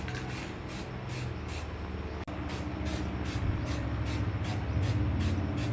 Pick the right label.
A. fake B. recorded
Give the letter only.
B